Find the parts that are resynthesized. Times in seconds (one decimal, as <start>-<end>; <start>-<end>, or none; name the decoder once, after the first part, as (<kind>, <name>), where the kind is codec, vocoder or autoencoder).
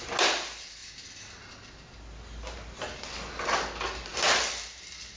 none